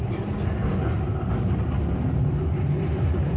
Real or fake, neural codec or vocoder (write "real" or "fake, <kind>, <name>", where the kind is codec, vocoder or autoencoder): real